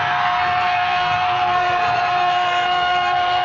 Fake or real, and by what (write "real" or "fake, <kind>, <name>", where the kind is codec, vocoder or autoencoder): fake, codec, SNAC